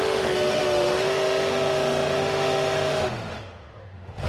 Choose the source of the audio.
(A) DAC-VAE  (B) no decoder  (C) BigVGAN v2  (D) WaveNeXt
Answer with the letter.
A